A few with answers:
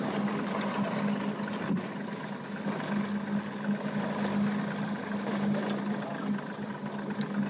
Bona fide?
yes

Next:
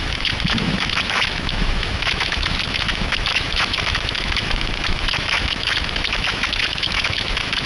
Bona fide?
no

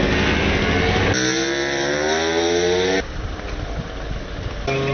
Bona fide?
yes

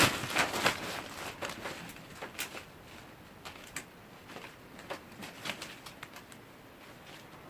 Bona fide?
yes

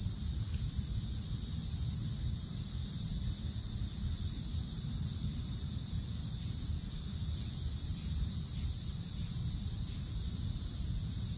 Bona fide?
yes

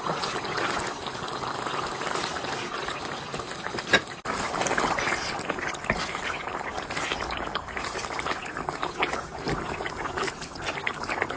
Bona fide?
yes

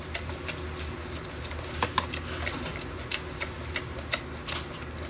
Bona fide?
yes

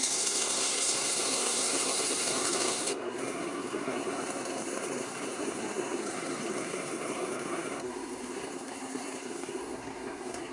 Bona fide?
no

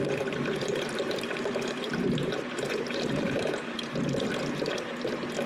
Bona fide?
no